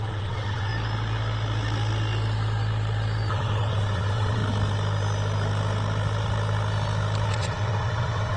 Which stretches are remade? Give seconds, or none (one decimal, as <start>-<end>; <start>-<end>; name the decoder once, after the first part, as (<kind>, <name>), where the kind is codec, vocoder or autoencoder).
0.0-0.7 (vocoder, WaveNeXt); 3.3-4.4; 7.3-8.4